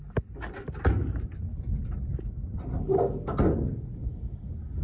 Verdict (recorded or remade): recorded